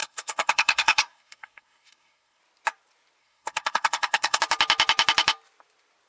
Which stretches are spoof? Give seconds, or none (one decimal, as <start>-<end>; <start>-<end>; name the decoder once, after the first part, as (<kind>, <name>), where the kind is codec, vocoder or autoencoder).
0.0-2.4 (codec, SNAC); 3.2-4.4